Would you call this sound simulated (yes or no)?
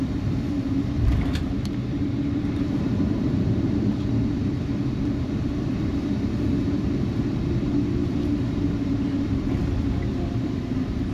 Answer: yes